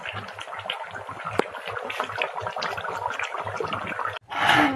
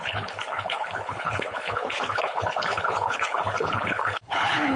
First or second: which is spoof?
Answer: second